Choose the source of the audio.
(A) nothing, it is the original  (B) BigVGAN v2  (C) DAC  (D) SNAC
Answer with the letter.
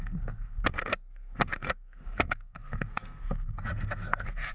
D